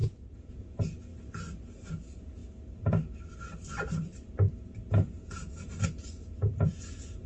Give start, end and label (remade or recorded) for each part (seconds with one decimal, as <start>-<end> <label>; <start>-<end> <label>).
0.0-1.1 remade; 1.1-1.9 recorded; 1.9-2.4 remade; 2.4-6.6 recorded; 6.6-7.3 remade